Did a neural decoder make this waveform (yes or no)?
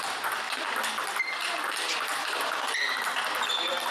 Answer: no